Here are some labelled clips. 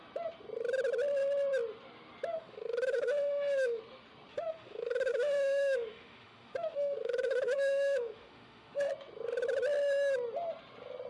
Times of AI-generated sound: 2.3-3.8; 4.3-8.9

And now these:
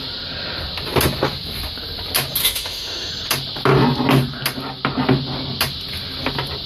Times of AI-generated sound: 2.4-3.1

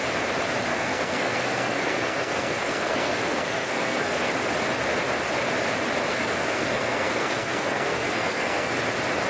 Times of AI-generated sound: 0.7-4.3; 6.1-8.7